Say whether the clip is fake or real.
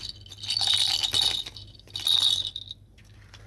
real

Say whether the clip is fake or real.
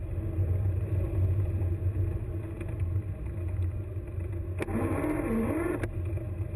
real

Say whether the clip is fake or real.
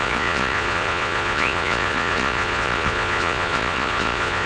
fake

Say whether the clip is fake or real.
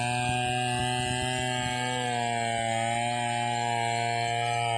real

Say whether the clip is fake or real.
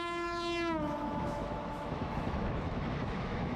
fake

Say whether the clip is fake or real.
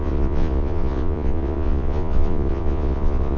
fake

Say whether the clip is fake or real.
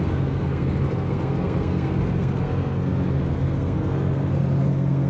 fake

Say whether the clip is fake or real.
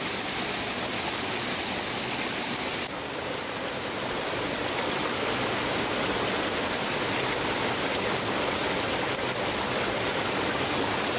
real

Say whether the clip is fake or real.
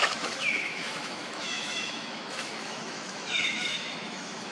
fake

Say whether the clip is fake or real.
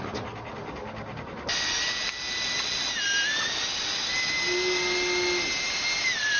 real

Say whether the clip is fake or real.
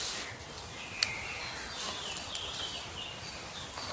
real